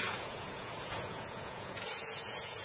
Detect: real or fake fake